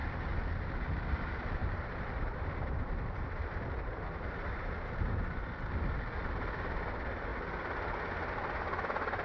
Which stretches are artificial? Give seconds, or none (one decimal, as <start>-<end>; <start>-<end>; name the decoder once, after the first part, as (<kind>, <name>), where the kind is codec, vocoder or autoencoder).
1.6-4.7 (vocoder, BigVGAN v2)